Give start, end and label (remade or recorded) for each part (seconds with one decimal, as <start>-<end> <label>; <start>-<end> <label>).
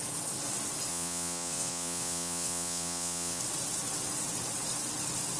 0.0-0.9 recorded; 0.9-3.4 remade; 3.4-5.4 recorded